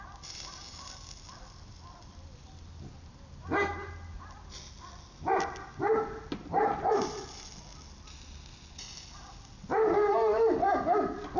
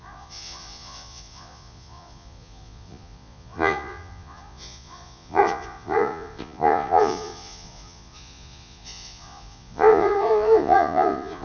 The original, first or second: first